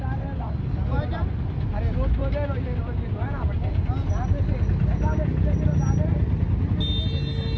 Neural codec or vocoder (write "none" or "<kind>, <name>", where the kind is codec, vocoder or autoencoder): none